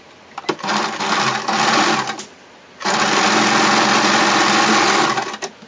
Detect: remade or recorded recorded